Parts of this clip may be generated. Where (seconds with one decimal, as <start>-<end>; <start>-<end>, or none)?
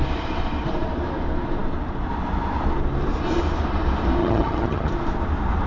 4.2-4.9